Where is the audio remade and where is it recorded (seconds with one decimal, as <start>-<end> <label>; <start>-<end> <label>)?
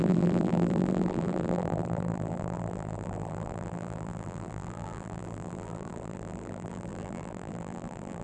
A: 0.0-8.2 remade